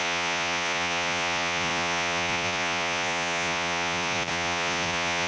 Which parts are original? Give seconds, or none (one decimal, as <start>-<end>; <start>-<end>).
none

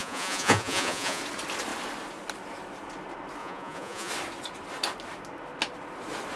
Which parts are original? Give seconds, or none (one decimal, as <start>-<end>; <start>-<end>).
1.2-3.4; 4.1-6.4

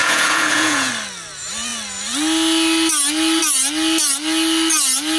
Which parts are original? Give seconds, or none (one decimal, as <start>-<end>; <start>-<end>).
0.9-5.2